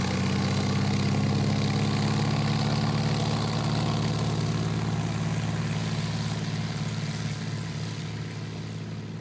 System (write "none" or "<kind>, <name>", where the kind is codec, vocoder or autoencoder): none